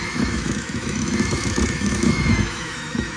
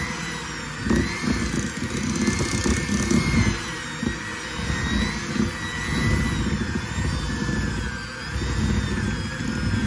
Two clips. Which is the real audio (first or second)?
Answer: second